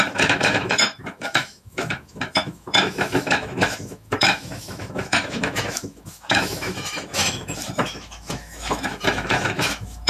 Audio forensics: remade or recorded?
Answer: remade